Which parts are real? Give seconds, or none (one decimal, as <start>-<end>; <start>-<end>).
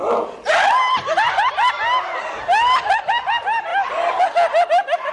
0.0-5.1